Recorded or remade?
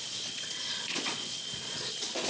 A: remade